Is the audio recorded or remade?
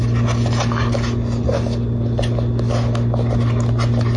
recorded